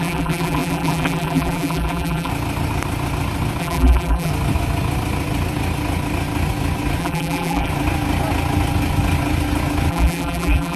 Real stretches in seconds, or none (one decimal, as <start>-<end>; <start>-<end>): 2.3-3.6; 4.3-7.0; 7.7-9.9